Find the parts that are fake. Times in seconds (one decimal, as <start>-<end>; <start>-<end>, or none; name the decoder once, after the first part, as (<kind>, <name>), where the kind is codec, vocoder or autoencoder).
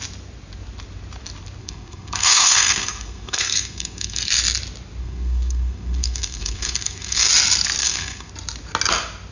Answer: 1.6-4.3 (codec, SNAC); 5.0-7.3; 7.8-8.3